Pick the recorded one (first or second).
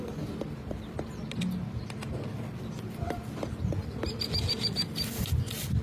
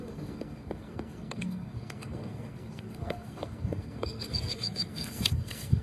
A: first